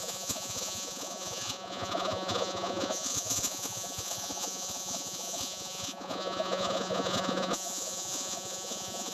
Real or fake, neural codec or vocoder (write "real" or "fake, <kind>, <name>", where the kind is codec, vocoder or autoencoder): fake, vocoder, Vocos